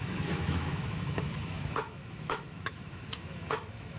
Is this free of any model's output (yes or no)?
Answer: no